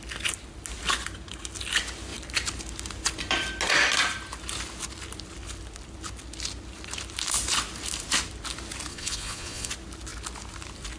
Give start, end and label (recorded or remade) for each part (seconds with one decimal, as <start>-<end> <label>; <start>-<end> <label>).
0.0-8.9 recorded; 8.9-9.7 remade; 9.7-11.0 recorded